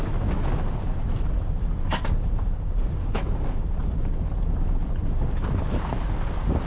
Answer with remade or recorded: recorded